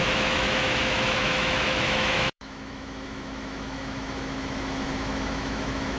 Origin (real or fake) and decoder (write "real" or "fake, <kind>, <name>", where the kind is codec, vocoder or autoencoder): fake, autoencoder, DAC-VAE